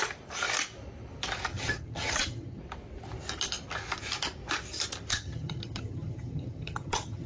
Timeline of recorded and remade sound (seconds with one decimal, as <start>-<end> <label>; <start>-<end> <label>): 0.0-1.5 recorded; 1.5-2.6 remade; 2.6-5.1 recorded; 5.1-7.3 remade